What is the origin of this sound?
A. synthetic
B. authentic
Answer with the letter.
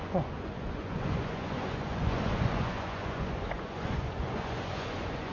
A